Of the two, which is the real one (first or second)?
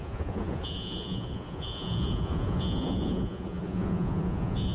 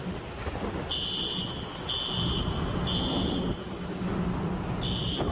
second